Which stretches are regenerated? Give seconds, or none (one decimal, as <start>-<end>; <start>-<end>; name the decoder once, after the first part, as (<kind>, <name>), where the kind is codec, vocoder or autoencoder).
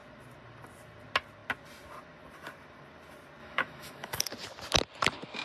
3.4-4.2 (autoencoder, DAC-VAE)